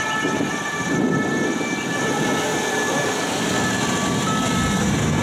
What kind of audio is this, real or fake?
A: real